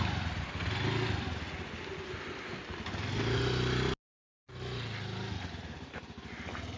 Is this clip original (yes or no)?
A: yes